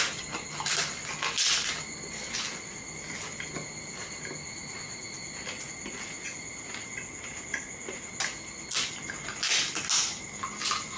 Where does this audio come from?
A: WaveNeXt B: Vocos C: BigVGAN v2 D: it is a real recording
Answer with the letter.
D